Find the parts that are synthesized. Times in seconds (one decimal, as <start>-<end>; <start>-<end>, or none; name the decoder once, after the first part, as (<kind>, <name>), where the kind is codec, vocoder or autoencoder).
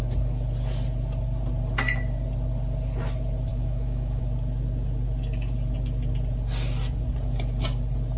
3.5-4.2 (autoencoder, DAC-VAE)